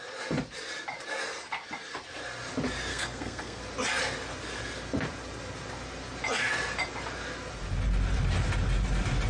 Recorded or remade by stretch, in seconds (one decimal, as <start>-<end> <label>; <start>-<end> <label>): 0.0-2.9 recorded; 2.9-3.6 remade; 3.6-9.3 recorded